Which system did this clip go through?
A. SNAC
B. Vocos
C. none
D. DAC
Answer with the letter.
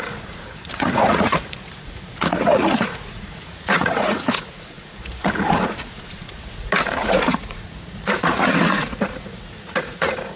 B